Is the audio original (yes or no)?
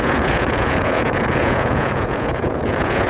no